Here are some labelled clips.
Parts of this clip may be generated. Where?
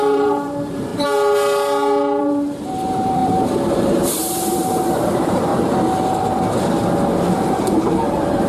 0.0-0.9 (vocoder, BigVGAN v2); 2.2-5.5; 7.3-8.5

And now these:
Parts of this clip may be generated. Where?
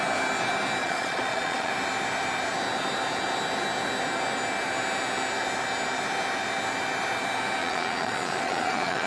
0.8-1.7 (vocoder, Vocos); 7.6-9.1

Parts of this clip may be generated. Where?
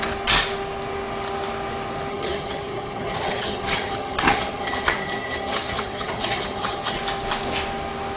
2.1-7.0 (vocoder, HiFi-GAN)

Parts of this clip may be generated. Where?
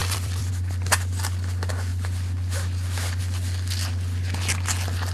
0.0-0.5 (vocoder, BigVGAN v2)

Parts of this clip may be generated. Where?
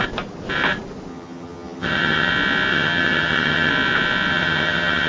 1.1-2.3 (vocoder, HiFi-GAN); 2.7-3.7; 4.3-5.1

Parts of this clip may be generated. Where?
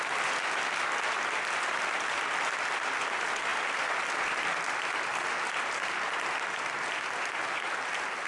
none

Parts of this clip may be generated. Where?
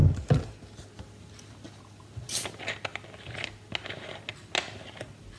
none